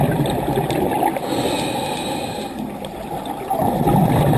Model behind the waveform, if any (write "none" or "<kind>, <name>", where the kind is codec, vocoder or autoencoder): none